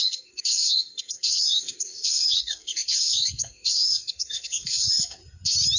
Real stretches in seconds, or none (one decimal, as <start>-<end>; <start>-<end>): 5.2-5.8